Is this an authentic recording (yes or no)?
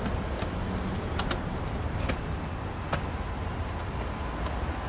yes